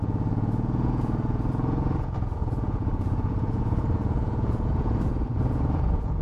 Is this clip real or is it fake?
fake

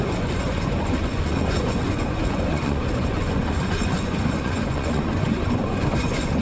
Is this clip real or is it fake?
fake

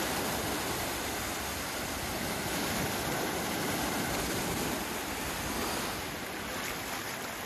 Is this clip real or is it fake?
real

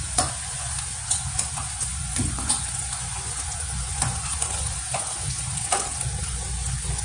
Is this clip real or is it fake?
fake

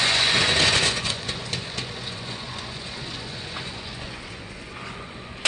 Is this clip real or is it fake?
fake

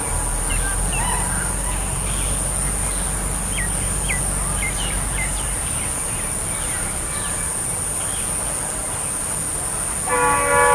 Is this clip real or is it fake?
real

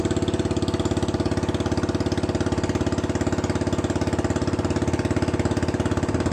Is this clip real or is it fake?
real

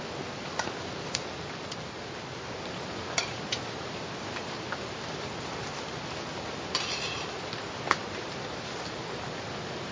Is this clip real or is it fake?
real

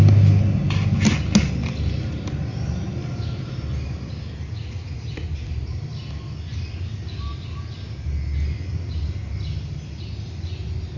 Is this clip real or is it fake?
real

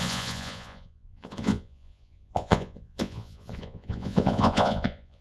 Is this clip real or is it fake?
fake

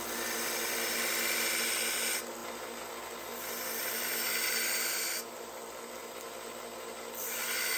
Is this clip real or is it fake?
real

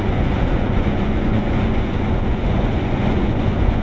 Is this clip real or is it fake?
fake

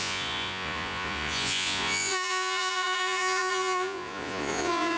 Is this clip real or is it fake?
fake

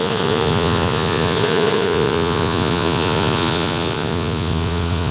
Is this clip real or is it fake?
fake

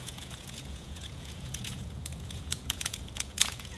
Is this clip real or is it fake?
fake